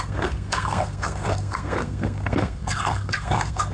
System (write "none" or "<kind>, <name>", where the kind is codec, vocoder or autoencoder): codec, SNAC